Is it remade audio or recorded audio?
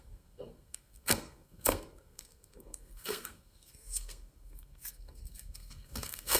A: remade